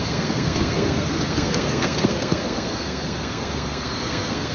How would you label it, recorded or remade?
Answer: remade